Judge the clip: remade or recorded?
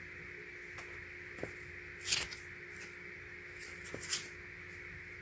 recorded